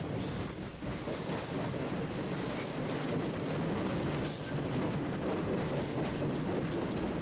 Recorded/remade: recorded